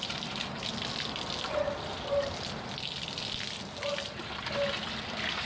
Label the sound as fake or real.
real